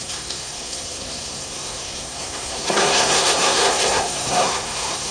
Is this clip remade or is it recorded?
remade